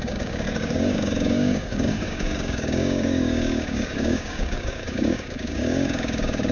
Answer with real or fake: fake